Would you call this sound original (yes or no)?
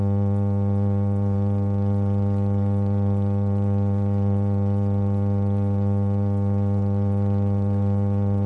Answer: no